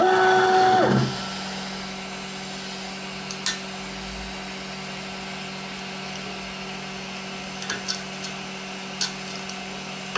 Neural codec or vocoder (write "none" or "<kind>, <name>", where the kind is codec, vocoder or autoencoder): none